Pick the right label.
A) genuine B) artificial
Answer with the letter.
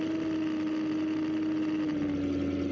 A